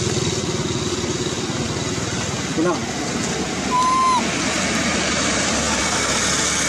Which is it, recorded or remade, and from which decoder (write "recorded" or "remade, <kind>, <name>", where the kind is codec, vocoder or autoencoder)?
recorded